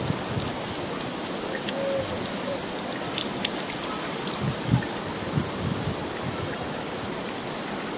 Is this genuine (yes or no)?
yes